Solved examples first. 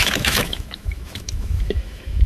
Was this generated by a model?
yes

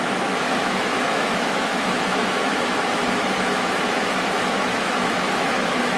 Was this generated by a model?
yes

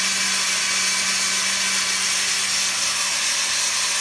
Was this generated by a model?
no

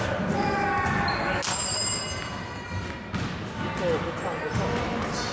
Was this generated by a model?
no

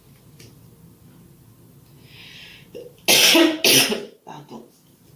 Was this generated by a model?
no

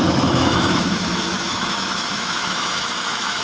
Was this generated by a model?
yes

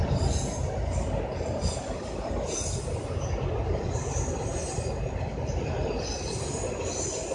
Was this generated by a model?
no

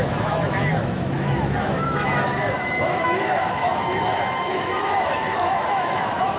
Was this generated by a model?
yes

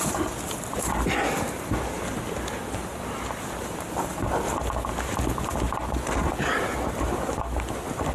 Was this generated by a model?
no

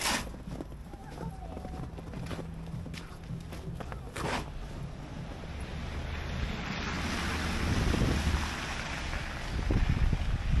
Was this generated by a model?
no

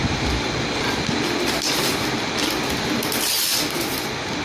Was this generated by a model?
no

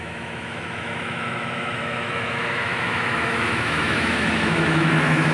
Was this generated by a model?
yes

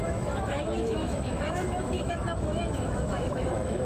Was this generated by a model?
yes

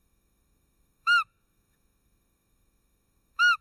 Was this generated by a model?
yes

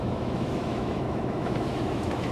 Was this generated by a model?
yes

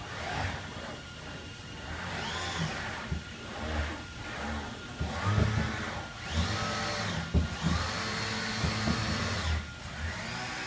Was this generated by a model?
no